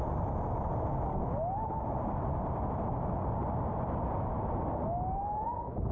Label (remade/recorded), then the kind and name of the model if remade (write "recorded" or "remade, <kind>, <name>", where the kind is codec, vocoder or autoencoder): recorded